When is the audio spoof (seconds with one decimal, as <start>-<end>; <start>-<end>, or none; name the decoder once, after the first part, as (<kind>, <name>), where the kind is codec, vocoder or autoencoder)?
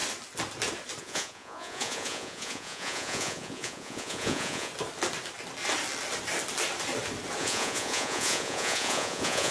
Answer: 1.0-4.7 (vocoder, Vocos); 7.4-9.5